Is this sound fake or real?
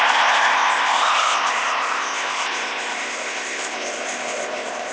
fake